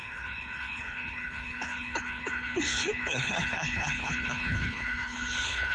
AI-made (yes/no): yes